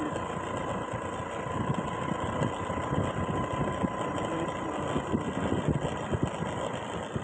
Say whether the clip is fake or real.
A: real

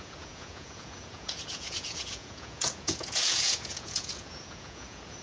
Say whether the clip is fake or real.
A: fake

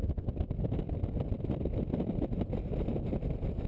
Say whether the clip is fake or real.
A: real